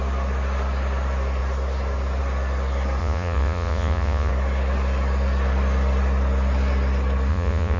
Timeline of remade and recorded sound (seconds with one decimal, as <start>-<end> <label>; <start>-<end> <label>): 0.0-3.0 recorded; 3.0-4.3 remade; 4.3-7.3 recorded; 7.3-7.8 remade